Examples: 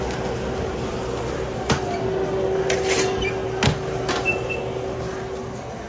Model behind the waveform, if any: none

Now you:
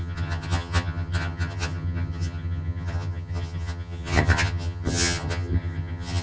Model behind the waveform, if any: vocoder, HiFi-GAN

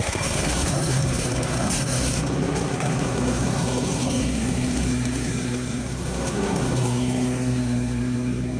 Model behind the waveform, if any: codec, SNAC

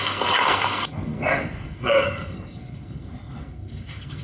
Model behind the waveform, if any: codec, SNAC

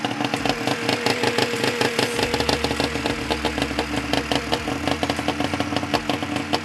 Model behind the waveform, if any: none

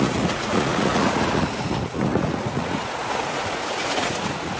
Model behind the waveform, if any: vocoder, Vocos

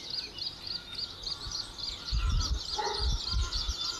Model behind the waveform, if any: vocoder, BigVGAN v2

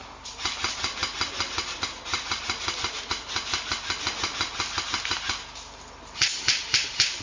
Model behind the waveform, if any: none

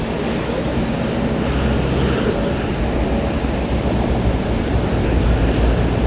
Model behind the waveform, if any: none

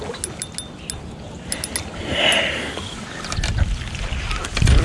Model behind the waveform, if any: none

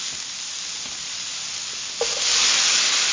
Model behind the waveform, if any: none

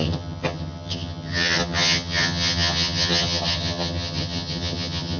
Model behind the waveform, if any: vocoder, HiFi-GAN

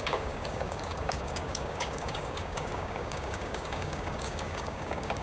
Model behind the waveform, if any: codec, DAC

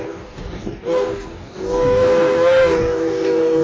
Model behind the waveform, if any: codec, DAC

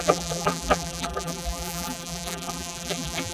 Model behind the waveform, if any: vocoder, BigVGAN v2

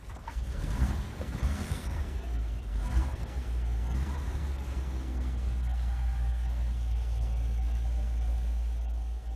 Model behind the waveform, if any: codec, SNAC